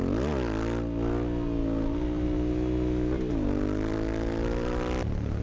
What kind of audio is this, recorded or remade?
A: recorded